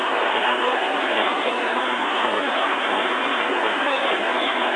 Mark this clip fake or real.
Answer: fake